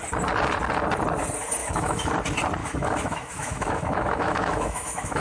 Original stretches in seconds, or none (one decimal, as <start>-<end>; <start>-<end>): 0.0-1.6; 2.1-2.6